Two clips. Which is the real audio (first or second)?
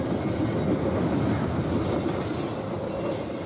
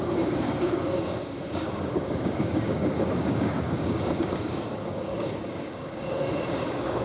first